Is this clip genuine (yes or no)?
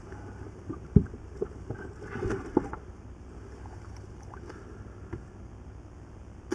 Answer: yes